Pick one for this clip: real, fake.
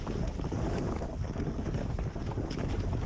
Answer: fake